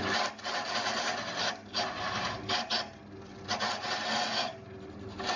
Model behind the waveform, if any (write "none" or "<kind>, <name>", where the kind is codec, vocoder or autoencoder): none